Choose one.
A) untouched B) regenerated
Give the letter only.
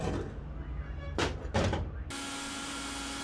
A